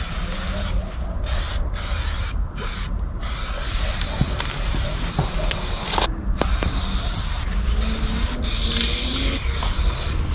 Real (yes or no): yes